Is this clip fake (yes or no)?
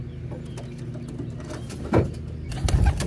no